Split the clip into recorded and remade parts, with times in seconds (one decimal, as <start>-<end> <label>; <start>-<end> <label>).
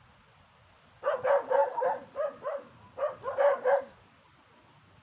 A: 0.0-5.0 recorded